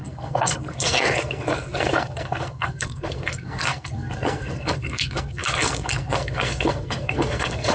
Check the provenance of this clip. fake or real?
fake